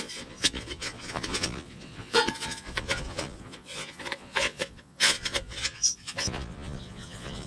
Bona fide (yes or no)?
no